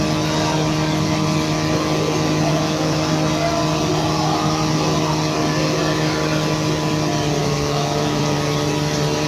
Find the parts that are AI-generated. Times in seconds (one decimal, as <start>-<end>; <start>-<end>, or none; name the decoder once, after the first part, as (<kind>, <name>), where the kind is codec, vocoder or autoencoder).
2.5-3.1 (autoencoder, DAC-VAE); 7.4-8.2